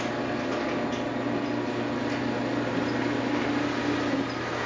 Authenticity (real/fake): real